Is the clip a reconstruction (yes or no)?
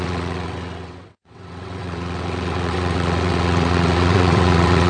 yes